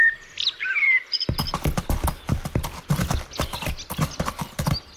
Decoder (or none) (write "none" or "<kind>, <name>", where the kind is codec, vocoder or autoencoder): none